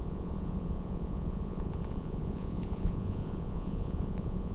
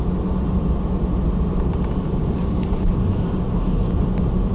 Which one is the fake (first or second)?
first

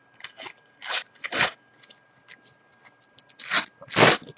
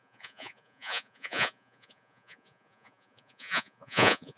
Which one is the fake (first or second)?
second